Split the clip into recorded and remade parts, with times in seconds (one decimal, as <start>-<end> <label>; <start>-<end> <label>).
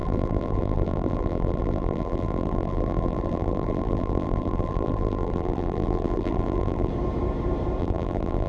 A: 0.0-6.9 remade; 6.9-7.8 recorded; 7.8-8.5 remade